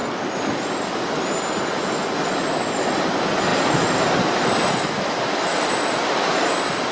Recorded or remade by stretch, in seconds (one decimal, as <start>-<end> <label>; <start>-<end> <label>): 0.0-6.9 recorded